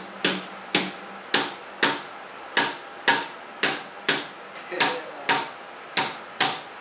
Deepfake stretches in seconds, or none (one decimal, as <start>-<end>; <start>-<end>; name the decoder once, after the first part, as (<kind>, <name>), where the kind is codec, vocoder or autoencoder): none